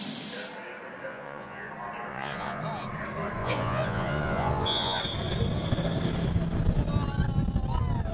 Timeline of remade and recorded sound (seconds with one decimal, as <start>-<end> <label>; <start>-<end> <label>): 0.0-1.1 recorded; 1.1-1.7 remade; 1.7-2.1 recorded; 2.1-2.6 remade; 2.6-3.4 recorded; 3.4-5.0 remade; 5.0-8.1 recorded